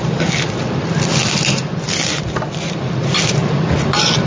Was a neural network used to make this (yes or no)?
yes